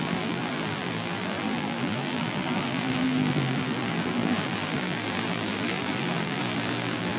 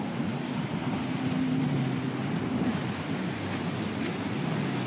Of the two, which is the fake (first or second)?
first